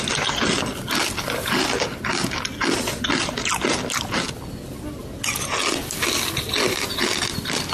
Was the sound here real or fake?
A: real